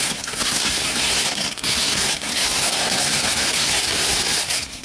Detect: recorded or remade remade